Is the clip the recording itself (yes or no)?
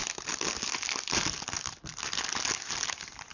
yes